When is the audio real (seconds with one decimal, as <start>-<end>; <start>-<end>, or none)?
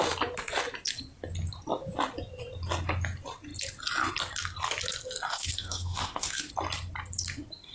0.0-5.3; 6.5-7.7